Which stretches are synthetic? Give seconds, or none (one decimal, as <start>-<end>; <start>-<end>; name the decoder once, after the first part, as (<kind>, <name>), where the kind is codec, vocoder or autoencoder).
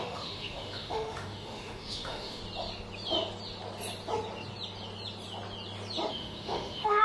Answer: 0.0-2.4 (autoencoder, DAC-VAE); 6.1-7.0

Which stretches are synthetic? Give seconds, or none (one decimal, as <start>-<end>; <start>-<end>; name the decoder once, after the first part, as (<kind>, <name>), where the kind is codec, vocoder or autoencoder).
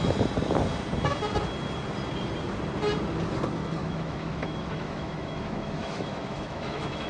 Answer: 3.8-7.1 (autoencoder, DAC-VAE)